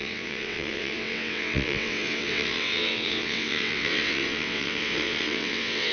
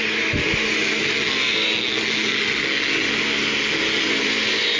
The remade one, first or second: first